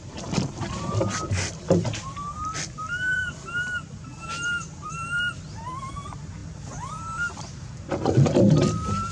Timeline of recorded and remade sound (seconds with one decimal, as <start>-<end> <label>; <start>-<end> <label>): 0.0-3.2 remade; 3.2-4.9 recorded; 4.9-9.1 remade